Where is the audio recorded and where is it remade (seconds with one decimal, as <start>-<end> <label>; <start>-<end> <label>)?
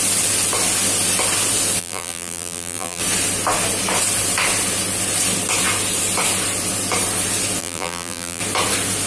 0.0-1.8 recorded; 1.8-3.0 remade; 3.0-7.6 recorded; 7.6-8.4 remade; 8.4-9.1 recorded